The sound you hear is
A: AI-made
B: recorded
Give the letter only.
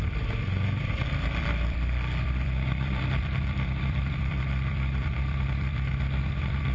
A